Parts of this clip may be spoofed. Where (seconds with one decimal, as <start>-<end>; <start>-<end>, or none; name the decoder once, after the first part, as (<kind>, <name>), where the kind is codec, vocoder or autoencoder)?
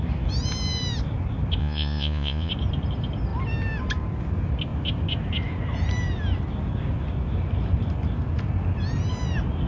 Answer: 1.6-2.5 (vocoder, Vocos)